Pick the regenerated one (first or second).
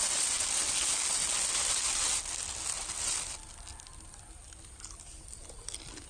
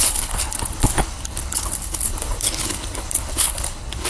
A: second